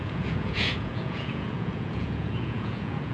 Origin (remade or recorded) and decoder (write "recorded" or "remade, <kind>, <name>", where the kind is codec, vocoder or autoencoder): remade, vocoder, Vocos